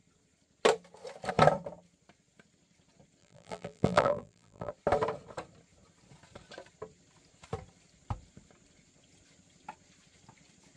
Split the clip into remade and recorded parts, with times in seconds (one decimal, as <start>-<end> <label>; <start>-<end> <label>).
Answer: 0.0-3.2 recorded; 3.2-4.7 remade; 4.7-10.8 recorded